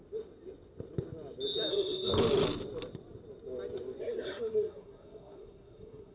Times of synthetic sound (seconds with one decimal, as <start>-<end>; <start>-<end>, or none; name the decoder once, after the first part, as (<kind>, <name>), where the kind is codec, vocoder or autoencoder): 1.7-2.1 (codec, SNAC); 4.0-6.1